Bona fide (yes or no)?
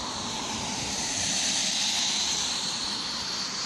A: no